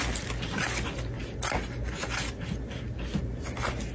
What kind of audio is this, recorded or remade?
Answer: recorded